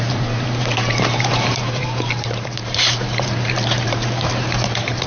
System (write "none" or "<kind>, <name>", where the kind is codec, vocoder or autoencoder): vocoder, BigVGAN v2